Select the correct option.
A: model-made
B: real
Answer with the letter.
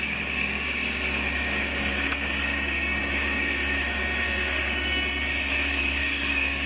A